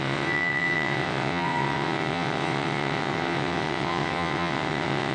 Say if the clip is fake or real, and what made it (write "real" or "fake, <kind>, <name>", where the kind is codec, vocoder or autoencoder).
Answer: fake, vocoder, WaveNeXt